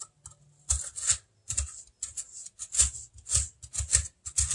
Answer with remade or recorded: recorded